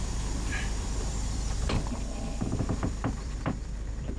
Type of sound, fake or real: fake